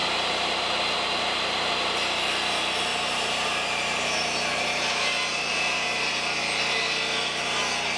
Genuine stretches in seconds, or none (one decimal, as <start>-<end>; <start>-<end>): 0.6-2.9; 6.1-8.0